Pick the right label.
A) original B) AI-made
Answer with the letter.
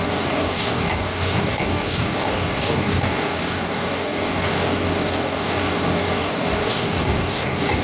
B